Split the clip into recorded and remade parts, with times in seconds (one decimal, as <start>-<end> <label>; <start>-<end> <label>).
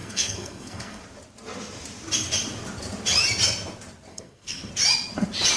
0.0-1.0 remade; 1.0-4.1 recorded; 4.1-4.7 remade; 4.7-5.6 recorded